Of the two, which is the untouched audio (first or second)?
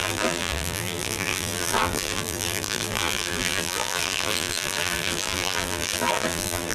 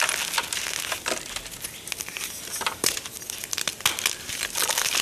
second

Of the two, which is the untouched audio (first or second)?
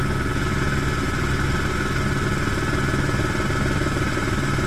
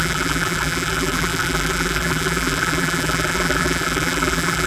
first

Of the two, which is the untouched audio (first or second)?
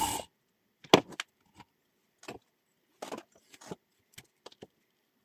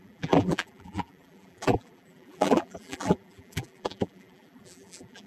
first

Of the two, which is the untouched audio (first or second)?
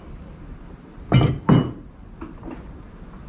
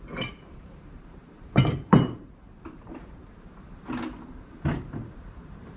first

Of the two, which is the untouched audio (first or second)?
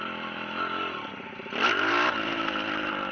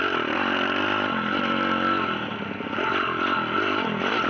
second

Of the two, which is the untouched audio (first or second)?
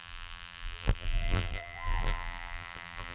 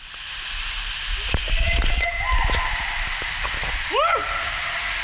second